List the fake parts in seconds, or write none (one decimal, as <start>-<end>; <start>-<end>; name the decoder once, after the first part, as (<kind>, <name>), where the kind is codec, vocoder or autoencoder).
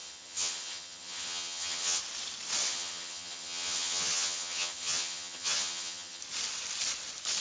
0.0-2.0 (vocoder, HiFi-GAN); 2.6-6.2